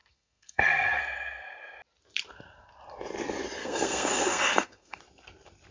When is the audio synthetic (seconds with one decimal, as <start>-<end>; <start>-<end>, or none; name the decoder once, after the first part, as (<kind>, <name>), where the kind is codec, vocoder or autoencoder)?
0.0-1.0 (codec, SNAC); 3.6-5.0